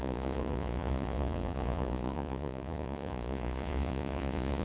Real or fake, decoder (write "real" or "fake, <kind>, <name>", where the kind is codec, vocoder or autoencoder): fake, vocoder, Vocos